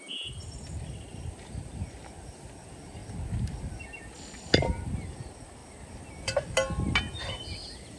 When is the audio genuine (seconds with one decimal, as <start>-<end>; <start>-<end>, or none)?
0.0-8.0